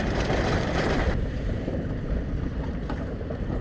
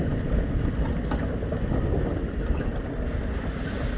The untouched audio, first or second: second